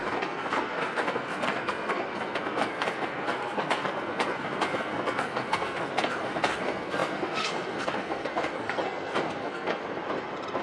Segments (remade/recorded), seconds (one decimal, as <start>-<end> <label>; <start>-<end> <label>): 0.0-9.8 remade; 9.8-10.6 recorded